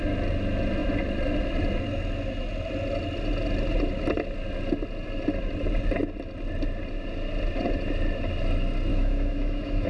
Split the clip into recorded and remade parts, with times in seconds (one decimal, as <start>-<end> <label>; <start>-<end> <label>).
0.0-8.9 recorded; 8.9-9.9 remade